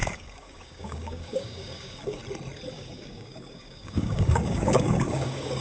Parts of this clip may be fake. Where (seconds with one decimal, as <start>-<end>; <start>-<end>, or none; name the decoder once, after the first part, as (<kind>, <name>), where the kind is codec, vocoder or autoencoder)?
0.0-2.2 (codec, DAC); 2.7-5.6